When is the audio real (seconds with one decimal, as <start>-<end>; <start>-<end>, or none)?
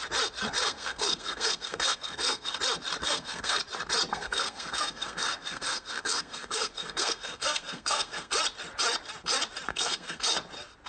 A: 0.0-0.6; 2.6-3.0; 3.6-4.1; 8.3-9.7; 10.2-10.9